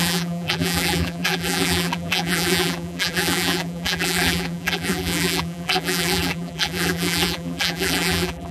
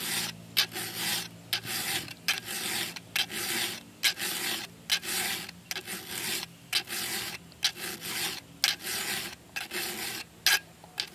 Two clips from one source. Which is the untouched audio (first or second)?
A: second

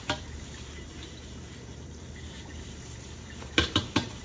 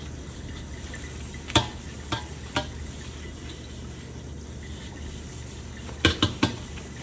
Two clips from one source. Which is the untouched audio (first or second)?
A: second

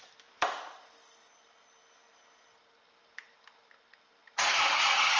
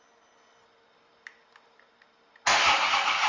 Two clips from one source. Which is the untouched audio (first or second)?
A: second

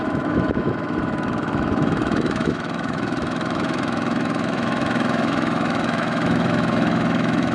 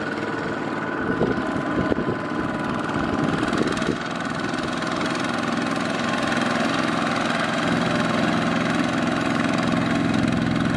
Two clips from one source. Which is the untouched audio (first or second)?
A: second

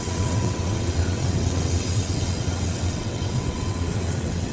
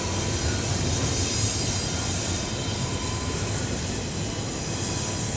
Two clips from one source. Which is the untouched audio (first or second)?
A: second